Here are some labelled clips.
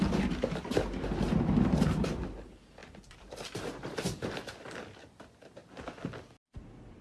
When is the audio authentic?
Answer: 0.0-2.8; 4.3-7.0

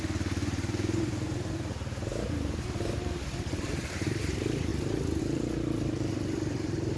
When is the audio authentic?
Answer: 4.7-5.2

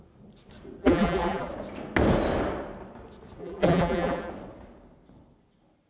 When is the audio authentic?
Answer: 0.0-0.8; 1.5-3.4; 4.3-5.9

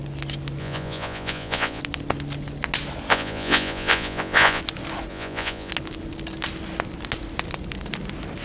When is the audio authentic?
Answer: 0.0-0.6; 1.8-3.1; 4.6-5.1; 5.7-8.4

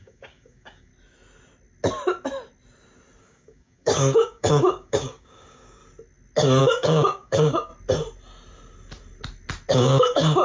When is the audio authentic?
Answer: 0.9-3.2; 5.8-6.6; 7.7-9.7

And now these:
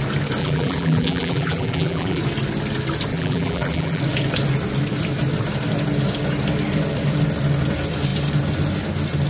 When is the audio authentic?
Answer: 0.0-0.4; 2.2-3.1; 4.0-9.3

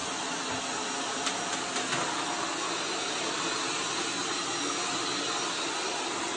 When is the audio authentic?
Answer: 0.0-6.4